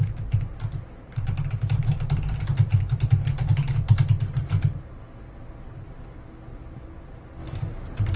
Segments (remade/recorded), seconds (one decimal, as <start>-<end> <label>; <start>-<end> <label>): 0.0-7.4 recorded; 7.4-8.2 remade